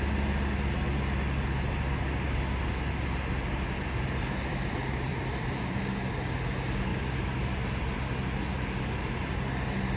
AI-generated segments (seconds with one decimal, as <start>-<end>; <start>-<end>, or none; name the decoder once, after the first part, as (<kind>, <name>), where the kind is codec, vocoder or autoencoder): 5.1-5.8 (vocoder, BigVGAN v2)